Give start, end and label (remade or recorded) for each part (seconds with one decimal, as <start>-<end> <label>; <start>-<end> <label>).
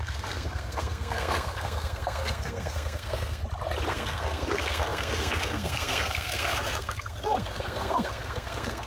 0.0-3.4 remade; 3.4-3.9 recorded; 3.9-8.9 remade